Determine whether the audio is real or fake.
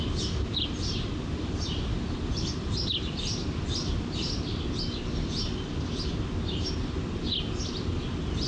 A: real